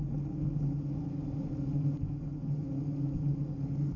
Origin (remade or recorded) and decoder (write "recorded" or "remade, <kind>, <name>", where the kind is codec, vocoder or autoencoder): recorded